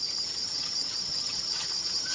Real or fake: fake